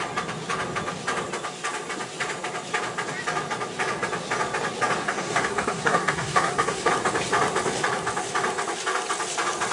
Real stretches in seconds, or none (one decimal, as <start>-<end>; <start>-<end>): 0.0-5.0; 6.9-9.7